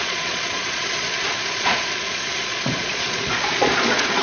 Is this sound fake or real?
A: fake